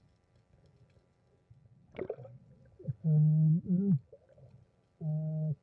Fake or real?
real